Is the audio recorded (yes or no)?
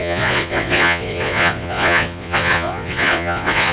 no